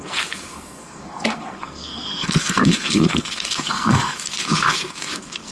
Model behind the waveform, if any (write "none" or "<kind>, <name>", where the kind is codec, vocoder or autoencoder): codec, SNAC